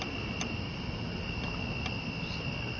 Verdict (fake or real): real